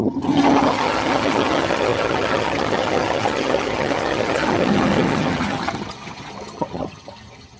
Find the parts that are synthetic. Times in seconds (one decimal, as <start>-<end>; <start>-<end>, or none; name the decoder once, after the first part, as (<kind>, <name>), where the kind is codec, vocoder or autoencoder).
0.0-7.6 (vocoder, HiFi-GAN)